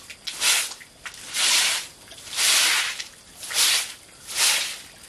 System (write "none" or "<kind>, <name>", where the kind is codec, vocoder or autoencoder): none